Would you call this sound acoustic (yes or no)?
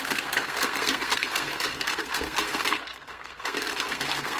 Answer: no